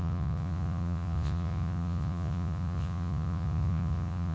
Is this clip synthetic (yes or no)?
yes